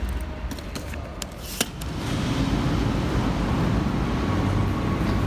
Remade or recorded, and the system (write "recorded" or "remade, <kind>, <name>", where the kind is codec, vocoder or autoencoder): recorded